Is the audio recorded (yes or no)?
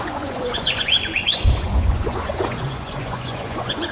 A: no